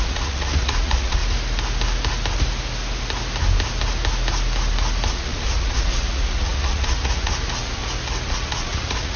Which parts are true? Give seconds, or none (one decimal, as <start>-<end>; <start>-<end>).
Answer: 1.2-5.1; 7.8-8.3